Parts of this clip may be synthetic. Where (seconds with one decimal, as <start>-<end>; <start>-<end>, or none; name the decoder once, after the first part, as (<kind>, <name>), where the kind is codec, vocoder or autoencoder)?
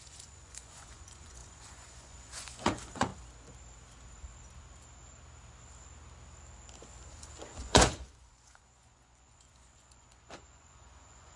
0.0-3.1 (vocoder, Vocos); 7.1-11.4